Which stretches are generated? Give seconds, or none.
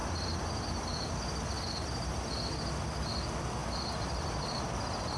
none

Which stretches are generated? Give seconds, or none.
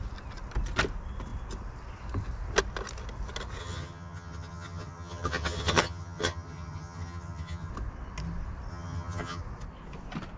3.6-7.7 (vocoder, HiFi-GAN); 8.7-9.4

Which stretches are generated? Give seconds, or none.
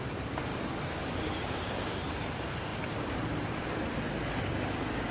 0.5-2.0 (codec, DAC)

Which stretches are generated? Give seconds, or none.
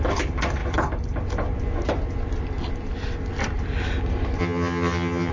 4.4-5.3 (vocoder, HiFi-GAN)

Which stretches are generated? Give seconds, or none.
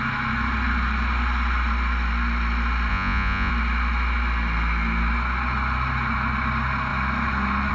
2.9-3.5 (vocoder, Vocos)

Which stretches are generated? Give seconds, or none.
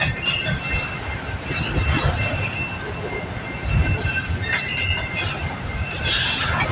none